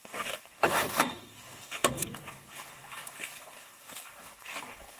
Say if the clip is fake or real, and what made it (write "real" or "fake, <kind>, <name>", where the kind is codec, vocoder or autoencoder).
fake, codec, DAC